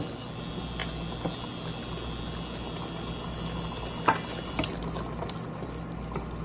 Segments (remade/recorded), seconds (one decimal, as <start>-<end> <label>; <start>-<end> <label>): 0.0-6.4 recorded